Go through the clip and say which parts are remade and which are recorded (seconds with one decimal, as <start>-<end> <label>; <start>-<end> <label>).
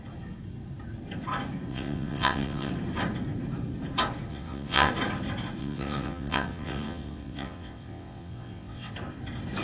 0.0-1.7 recorded; 1.7-2.7 remade; 2.7-4.3 recorded; 4.3-4.9 remade; 4.9-5.6 recorded; 5.6-8.9 remade; 8.9-9.6 recorded